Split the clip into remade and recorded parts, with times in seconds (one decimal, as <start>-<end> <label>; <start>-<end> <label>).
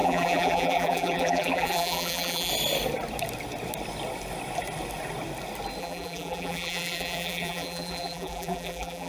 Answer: 0.0-2.5 remade; 2.5-5.8 recorded; 5.8-9.1 remade